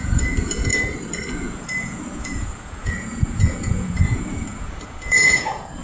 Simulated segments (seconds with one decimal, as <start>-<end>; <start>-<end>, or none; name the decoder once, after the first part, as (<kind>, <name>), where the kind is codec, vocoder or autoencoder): 0.0-0.7 (vocoder, Vocos); 1.3-5.8